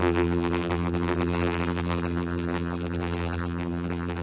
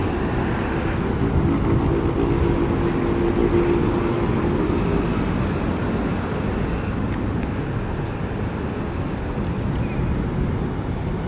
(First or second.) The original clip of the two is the second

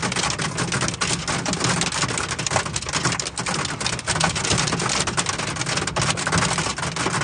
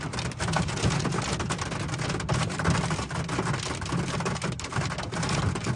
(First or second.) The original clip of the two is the first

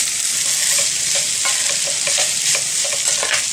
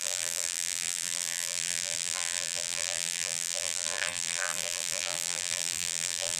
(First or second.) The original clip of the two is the first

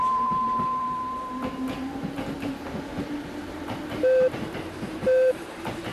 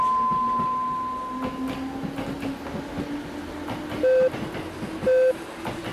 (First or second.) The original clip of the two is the second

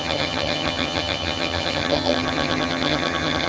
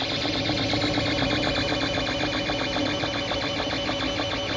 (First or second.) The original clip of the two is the second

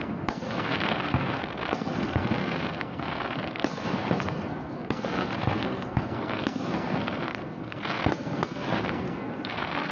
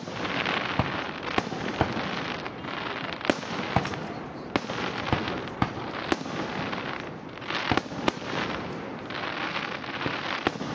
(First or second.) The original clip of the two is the second